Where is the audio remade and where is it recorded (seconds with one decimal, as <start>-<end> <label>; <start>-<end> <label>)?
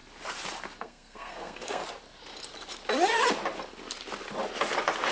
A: 0.0-0.8 recorded; 0.8-1.8 remade; 1.8-5.1 recorded